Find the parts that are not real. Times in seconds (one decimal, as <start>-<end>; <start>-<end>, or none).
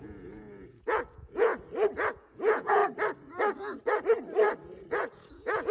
0.0-1.5; 2.1-2.8; 4.9-5.7